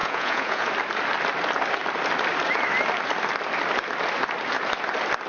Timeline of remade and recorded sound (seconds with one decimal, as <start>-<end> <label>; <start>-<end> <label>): 0.0-0.7 remade; 0.7-5.3 recorded